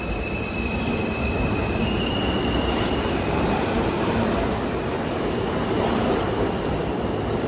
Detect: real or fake fake